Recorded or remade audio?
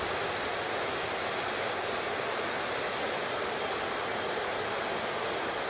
recorded